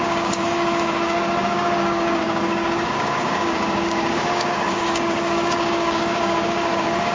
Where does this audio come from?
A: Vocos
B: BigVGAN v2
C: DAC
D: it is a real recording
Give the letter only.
C